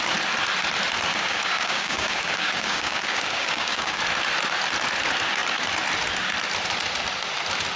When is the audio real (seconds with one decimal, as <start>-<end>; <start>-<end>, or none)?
0.0-1.1; 4.0-7.8